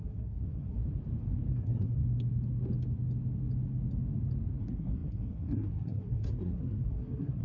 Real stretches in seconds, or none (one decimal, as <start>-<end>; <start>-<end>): 0.8-1.5; 2.0-4.6